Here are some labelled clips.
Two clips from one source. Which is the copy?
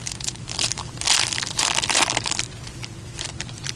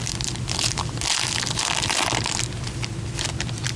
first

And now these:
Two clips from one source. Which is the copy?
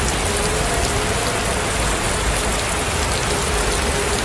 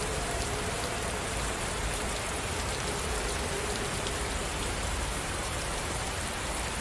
second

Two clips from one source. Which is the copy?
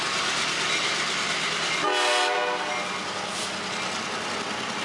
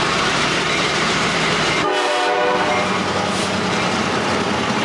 second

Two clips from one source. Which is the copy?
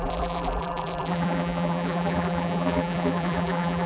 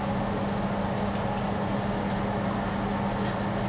first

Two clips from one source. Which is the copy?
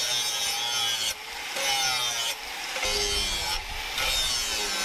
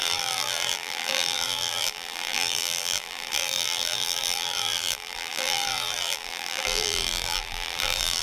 second